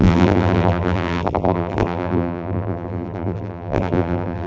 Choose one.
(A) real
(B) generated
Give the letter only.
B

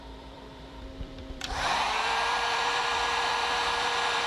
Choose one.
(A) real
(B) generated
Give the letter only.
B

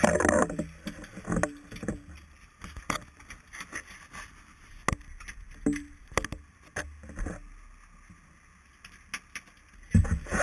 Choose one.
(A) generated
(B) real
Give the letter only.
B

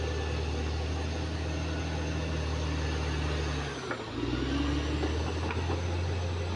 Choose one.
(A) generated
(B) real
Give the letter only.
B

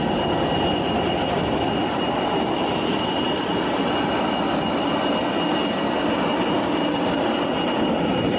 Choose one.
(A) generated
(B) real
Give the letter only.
B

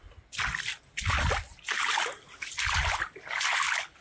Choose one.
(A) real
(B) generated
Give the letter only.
A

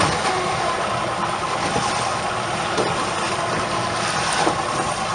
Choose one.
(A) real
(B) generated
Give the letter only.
A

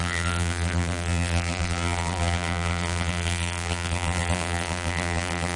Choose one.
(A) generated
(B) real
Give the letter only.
A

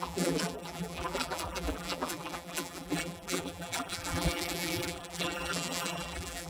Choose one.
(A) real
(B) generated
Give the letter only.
B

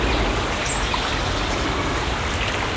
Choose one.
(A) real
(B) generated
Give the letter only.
A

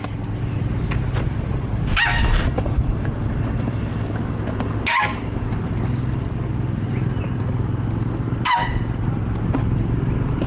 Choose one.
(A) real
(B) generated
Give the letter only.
A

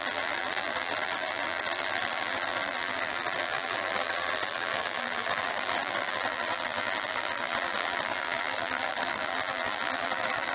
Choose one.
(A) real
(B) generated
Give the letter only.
B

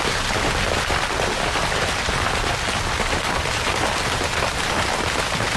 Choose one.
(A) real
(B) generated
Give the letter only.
B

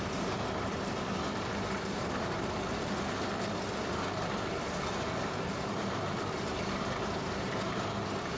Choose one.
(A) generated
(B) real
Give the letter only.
A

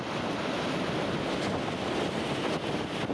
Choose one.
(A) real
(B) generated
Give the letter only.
A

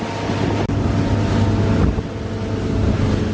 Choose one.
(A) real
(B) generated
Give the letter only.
A